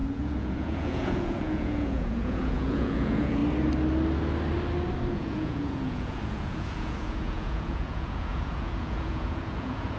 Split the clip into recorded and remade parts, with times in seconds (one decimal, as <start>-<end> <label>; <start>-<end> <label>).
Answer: 0.0-3.4 remade; 3.4-5.1 recorded; 5.1-10.0 remade